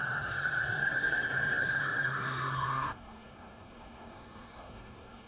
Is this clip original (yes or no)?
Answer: no